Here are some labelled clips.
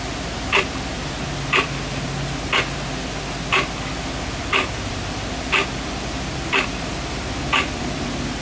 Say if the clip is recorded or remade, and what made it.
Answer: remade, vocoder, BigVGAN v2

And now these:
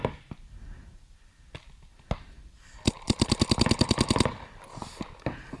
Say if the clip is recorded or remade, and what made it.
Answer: recorded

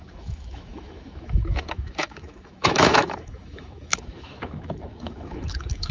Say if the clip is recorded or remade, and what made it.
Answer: remade, autoencoder, DAC-VAE